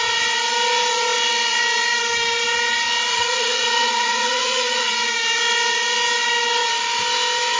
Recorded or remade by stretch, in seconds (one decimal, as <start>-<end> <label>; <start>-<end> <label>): 0.0-3.1 recorded; 3.1-4.9 remade; 4.9-7.6 recorded